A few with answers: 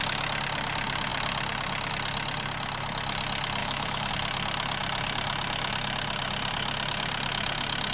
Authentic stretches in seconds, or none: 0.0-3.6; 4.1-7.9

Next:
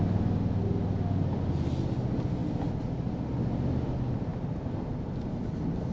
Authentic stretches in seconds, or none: 0.0-5.9

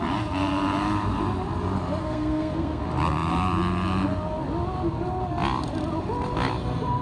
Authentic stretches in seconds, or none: 0.0-2.0; 2.8-7.0

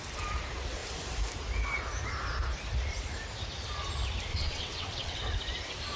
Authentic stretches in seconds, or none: 0.0-4.3; 5.2-6.0